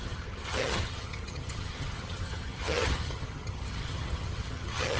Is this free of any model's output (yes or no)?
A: no